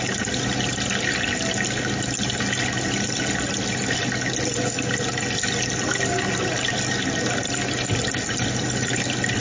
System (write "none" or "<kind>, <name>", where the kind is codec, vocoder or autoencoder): none